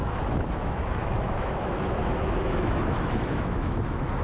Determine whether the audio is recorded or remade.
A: remade